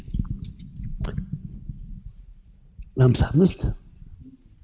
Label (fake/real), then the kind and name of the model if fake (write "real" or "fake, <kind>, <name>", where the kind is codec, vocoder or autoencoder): real